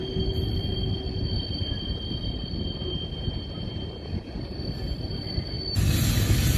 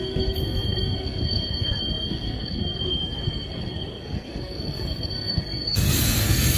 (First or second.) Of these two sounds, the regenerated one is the second